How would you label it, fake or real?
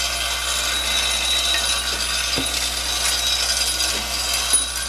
real